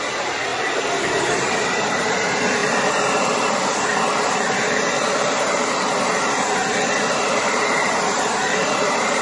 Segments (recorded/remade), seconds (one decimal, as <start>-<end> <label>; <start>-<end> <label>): 0.0-2.6 remade; 2.6-3.6 recorded; 3.6-9.2 remade